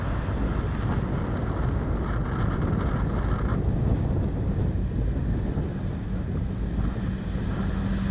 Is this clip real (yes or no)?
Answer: yes